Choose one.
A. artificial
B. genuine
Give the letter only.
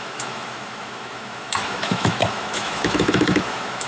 A